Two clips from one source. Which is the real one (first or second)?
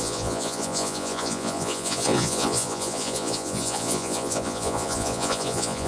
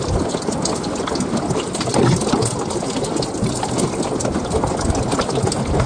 second